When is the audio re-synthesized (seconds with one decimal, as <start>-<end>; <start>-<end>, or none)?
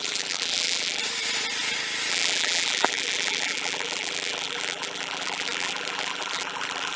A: 0.0-1.0; 2.1-7.0